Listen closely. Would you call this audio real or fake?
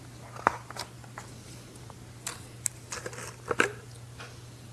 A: real